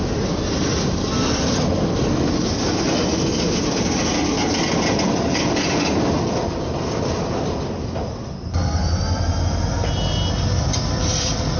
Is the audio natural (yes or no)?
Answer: yes